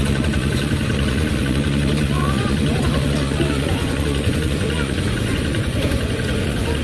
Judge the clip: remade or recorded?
remade